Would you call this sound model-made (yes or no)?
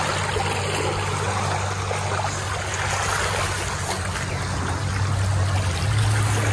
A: no